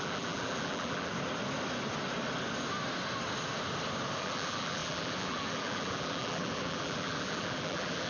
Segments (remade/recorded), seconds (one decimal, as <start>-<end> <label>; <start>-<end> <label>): 0.0-1.1 remade; 1.1-4.2 recorded; 4.2-8.1 remade